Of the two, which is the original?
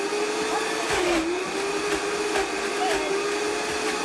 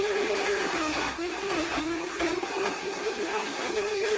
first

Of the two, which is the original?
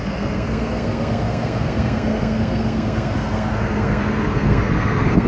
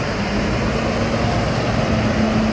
second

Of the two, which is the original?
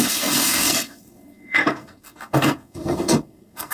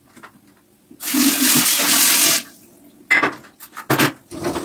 second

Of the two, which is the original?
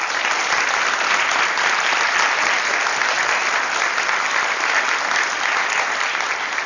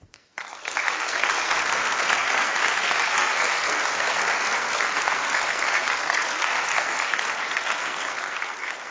first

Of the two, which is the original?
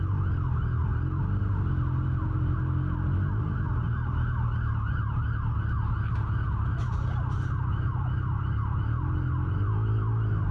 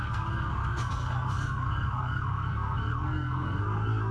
first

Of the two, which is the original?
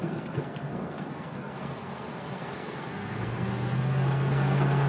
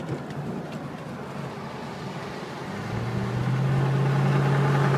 second